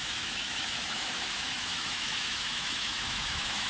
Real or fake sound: fake